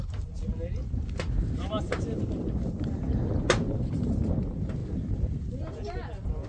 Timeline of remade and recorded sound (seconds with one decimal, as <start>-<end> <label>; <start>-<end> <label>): 0.0-6.5 recorded